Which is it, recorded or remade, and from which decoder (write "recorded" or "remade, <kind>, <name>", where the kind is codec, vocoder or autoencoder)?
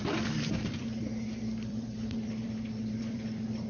remade, vocoder, BigVGAN v2